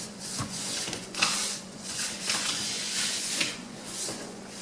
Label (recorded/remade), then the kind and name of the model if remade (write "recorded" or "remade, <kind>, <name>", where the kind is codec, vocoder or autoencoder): remade, vocoder, Vocos